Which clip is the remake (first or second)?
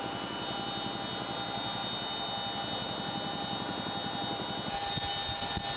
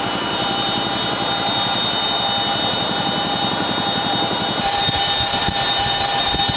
second